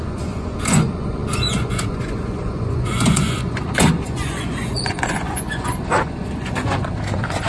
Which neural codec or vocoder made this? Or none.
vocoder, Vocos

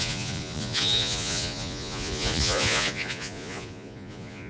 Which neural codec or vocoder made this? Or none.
vocoder, Vocos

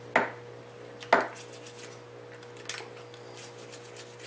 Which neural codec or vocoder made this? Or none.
none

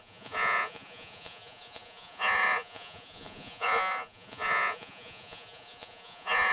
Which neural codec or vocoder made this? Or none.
vocoder, Vocos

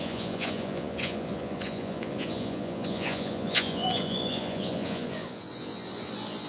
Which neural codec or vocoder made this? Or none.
vocoder, Vocos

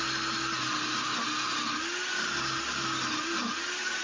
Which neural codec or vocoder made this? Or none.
none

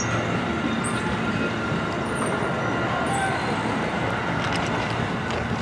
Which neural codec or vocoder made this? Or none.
none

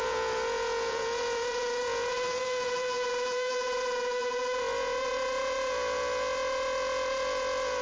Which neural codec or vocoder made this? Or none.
vocoder, Vocos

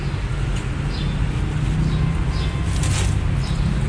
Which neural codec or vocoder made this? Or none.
none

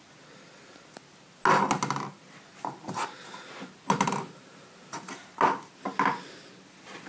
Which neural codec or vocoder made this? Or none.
none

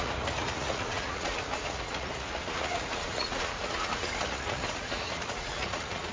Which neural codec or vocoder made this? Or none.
vocoder, Vocos